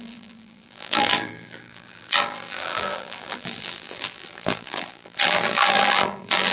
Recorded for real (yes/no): no